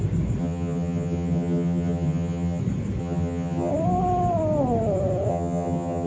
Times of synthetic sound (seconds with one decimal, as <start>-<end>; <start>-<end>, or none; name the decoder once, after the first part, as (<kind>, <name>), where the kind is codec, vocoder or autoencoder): 0.4-2.6 (vocoder, HiFi-GAN); 3.0-3.7; 5.3-6.1